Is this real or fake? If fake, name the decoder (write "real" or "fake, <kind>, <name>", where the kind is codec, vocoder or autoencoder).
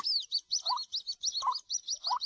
real